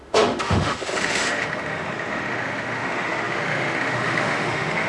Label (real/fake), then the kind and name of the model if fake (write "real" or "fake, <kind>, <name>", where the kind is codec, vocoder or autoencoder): fake, autoencoder, DAC-VAE